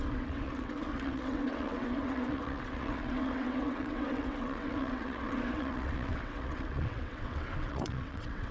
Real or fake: fake